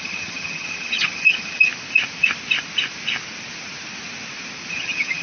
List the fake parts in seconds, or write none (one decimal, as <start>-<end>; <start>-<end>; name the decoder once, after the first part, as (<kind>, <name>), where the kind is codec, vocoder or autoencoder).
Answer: 0.0-1.7 (vocoder, HiFi-GAN); 4.7-5.2